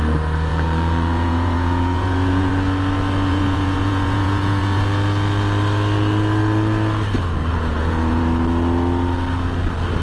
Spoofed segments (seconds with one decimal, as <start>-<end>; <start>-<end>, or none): 0.5-2.5; 3.3-4.8; 7.5-8.2